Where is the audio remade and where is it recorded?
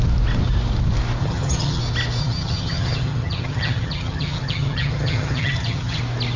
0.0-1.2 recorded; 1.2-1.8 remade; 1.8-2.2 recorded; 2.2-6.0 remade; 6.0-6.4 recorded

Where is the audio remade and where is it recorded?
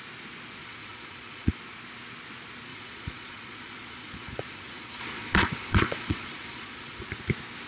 0.0-0.6 recorded; 0.6-1.5 remade; 1.5-2.7 recorded; 2.7-7.0 remade; 7.0-7.7 recorded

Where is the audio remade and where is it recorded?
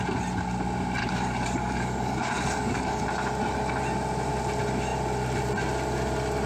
0.0-1.0 recorded; 1.0-3.0 remade; 3.0-6.5 recorded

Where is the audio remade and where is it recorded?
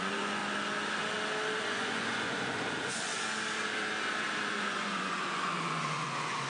0.0-0.4 remade; 0.4-1.6 recorded; 1.6-3.1 remade; 3.1-4.5 recorded; 4.5-6.5 remade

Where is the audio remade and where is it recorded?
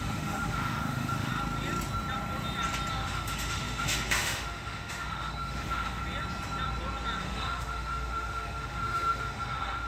0.0-1.3 remade; 1.3-2.9 recorded; 2.9-6.0 remade; 6.0-7.2 recorded; 7.2-9.9 remade